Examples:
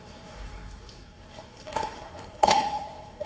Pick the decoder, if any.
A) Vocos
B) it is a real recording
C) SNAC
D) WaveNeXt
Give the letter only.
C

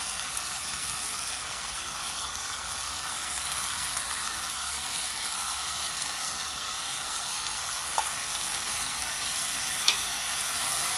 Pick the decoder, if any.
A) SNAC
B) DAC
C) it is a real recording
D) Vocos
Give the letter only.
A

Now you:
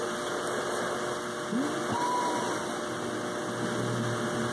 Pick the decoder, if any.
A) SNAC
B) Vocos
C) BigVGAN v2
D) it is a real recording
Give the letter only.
D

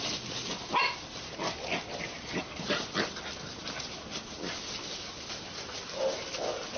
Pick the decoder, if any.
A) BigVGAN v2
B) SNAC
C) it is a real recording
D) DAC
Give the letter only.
C